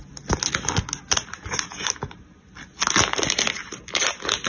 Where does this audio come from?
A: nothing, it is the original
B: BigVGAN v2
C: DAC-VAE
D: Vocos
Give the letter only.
A